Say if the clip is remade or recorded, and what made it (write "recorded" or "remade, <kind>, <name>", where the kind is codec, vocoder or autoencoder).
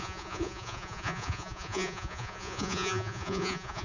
remade, vocoder, Vocos